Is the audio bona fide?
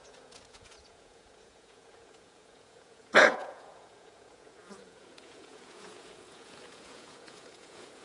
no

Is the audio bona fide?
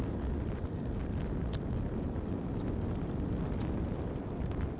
yes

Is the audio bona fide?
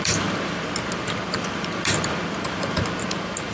no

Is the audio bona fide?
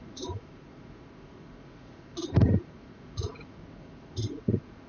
no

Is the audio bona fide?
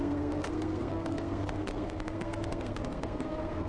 no